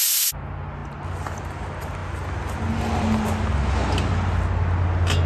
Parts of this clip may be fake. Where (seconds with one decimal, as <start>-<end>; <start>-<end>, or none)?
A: none